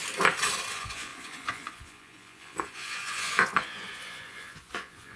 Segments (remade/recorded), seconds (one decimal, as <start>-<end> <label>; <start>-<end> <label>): 0.0-0.7 recorded; 0.7-5.2 remade